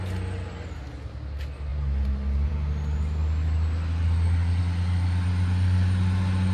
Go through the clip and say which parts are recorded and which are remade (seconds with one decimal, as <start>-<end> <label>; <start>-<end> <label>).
0.0-6.5 recorded